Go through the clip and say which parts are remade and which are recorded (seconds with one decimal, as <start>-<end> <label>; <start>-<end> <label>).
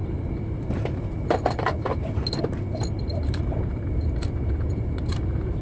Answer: 0.0-2.4 remade; 2.4-3.1 recorded; 3.1-5.6 remade